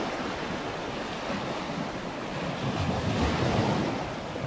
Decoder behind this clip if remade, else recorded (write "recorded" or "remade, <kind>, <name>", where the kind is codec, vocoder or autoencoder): recorded